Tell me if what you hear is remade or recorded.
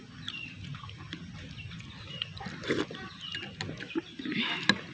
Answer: recorded